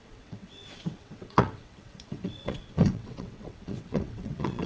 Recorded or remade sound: remade